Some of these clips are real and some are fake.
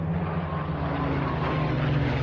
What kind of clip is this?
real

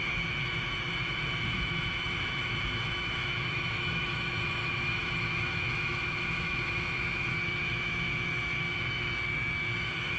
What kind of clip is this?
fake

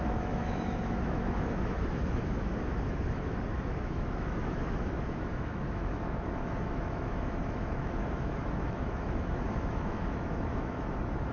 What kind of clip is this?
fake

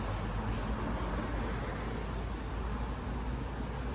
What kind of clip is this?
real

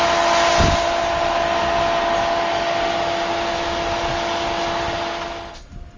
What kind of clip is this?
real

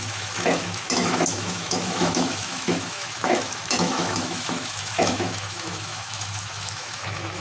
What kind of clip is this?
fake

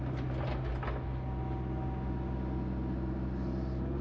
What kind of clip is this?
real